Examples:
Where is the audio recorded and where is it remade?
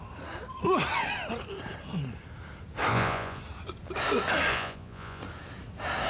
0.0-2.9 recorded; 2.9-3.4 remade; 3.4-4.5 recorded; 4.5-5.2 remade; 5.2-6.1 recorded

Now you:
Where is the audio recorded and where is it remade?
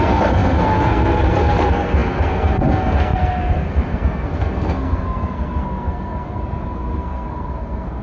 0.0-8.0 remade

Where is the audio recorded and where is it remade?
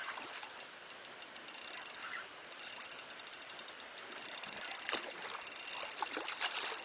0.0-2.0 recorded; 2.0-4.8 remade; 4.8-6.8 recorded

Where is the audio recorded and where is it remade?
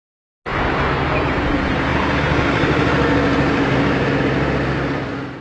0.0-5.4 recorded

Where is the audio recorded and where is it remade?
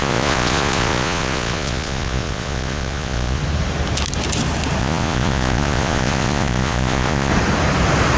0.0-3.4 remade; 3.4-4.8 recorded; 4.8-7.3 remade; 7.3-8.2 recorded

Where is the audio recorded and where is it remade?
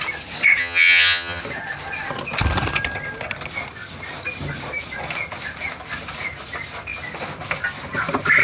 0.0-0.6 recorded; 0.6-1.4 remade; 1.4-8.4 recorded